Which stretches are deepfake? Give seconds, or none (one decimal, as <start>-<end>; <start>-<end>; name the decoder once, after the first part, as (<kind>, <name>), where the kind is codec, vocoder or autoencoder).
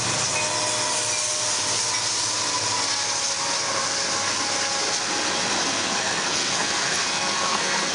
5.6-7.9 (codec, SNAC)